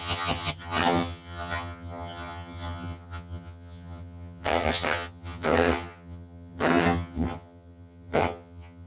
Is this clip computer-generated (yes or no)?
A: yes